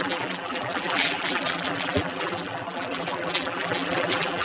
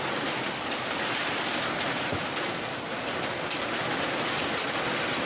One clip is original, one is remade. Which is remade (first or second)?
first